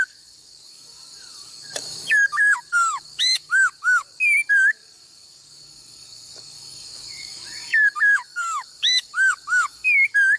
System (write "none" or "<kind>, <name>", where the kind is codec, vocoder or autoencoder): codec, DAC